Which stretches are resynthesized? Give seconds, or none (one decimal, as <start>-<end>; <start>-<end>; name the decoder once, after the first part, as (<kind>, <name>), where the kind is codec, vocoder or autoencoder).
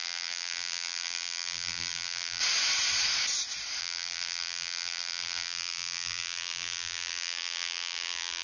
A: 0.0-2.4 (vocoder, BigVGAN v2); 3.8-8.4